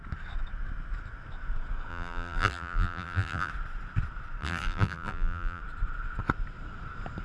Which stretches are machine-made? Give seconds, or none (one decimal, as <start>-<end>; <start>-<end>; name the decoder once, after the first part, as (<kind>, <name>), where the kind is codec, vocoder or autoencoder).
1.9-3.5 (vocoder, BigVGAN v2); 4.4-5.6